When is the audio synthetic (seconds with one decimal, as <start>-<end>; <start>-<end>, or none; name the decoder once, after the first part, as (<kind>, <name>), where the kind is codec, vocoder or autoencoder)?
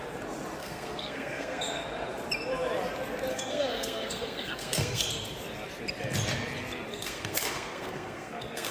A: 0.6-1.8 (codec, SNAC); 3.3-5.1; 6.9-8.7